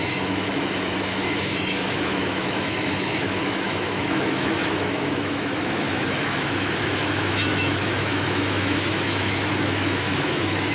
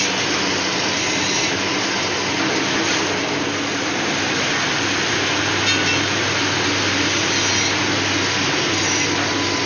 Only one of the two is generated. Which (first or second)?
first